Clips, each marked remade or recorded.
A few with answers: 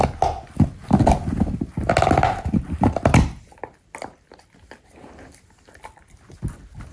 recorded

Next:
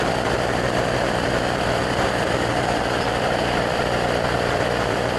remade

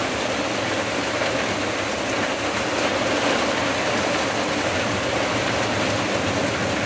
recorded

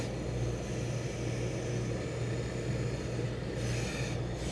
recorded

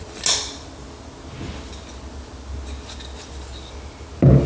recorded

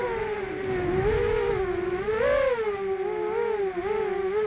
recorded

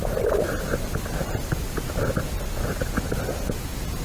recorded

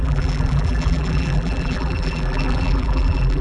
remade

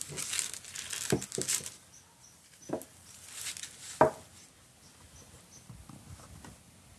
recorded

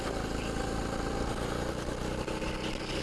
recorded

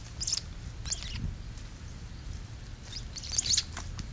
recorded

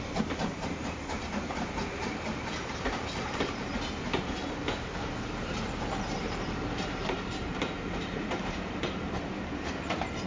remade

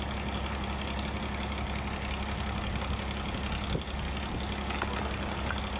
recorded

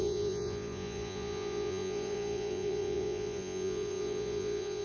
remade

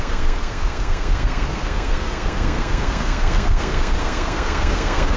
remade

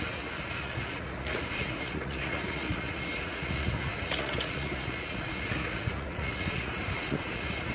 remade